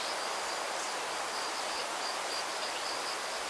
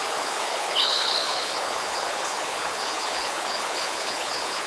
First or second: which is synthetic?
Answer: second